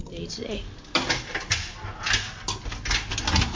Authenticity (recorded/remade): recorded